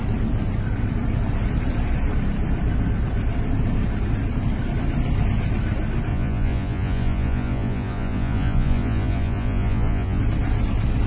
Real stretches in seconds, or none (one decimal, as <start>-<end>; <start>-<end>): 0.0-6.1; 10.2-11.1